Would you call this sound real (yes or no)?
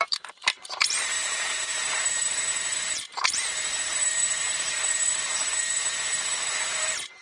no